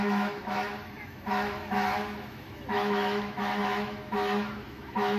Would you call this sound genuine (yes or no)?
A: no